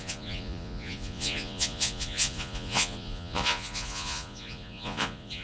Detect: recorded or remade remade